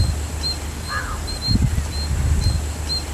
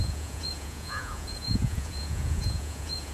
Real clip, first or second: first